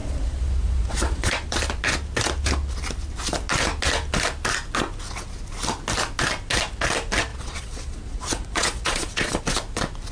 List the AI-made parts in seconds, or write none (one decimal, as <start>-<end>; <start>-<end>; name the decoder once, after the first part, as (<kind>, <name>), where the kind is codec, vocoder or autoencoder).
0.0-1.3 (vocoder, Vocos); 7.3-9.4